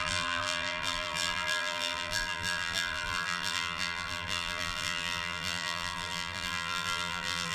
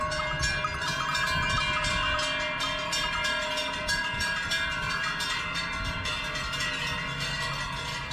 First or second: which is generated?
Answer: first